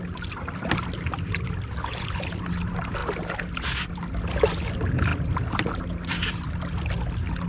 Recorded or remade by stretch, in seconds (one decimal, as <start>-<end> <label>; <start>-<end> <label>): 0.0-7.5 recorded